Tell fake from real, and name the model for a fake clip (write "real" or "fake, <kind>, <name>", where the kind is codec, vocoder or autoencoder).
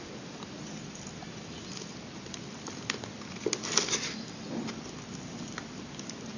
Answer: real